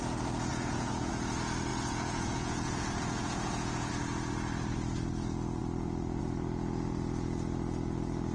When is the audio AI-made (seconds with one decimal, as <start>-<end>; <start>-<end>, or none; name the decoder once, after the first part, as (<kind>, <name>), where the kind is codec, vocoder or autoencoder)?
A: 0.5-1.1 (vocoder, Vocos); 1.7-3.9